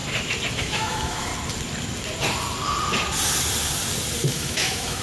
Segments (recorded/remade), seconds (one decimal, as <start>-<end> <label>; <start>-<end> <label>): 0.0-0.5 recorded; 0.5-1.3 remade; 1.3-4.3 recorded; 4.3-5.0 remade